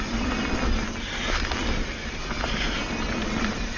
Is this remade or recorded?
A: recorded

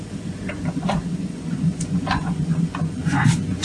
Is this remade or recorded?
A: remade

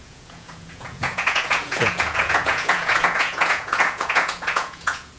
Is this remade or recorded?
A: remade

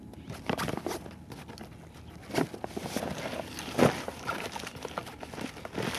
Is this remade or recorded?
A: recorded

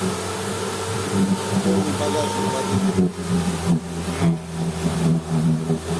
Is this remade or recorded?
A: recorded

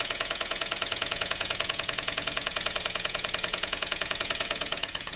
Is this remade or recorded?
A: remade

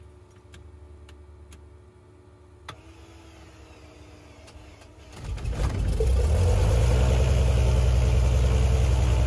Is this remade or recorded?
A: recorded